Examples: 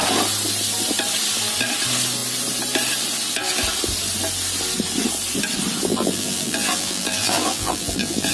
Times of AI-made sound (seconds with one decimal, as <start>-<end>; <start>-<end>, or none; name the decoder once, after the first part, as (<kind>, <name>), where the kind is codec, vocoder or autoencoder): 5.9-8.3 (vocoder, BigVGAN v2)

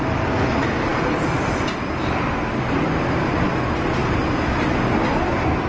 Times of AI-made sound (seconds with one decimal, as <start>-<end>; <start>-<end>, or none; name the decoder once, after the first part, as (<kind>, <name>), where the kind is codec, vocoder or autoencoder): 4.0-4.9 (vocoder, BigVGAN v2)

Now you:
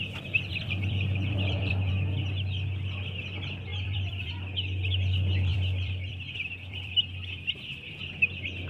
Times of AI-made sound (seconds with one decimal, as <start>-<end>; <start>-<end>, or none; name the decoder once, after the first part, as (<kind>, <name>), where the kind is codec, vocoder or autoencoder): 0.5-1.9 (vocoder, BigVGAN v2); 3.7-4.3; 5.5-8.0